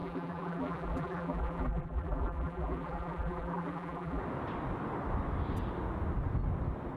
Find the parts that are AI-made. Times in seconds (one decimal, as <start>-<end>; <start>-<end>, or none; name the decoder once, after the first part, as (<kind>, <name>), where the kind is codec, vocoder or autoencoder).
0.0-4.2 (vocoder, BigVGAN v2)